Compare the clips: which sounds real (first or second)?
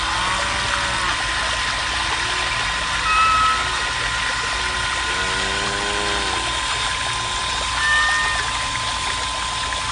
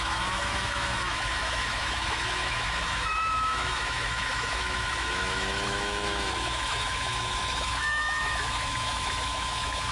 first